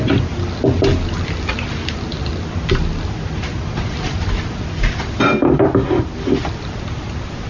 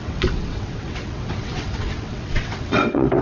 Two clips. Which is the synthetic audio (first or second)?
second